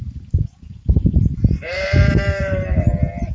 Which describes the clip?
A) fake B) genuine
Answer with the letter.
A